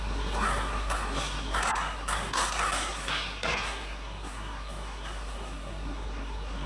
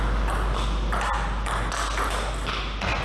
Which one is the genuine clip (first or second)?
second